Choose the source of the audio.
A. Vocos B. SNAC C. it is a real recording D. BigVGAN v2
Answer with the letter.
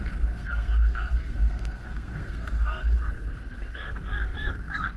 B